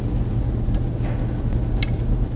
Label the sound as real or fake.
real